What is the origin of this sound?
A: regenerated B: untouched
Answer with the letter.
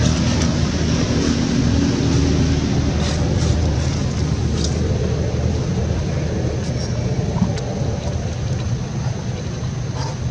B